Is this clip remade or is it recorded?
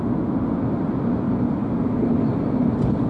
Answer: recorded